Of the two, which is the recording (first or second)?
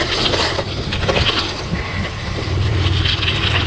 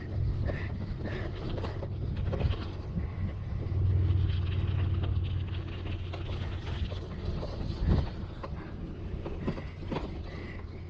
second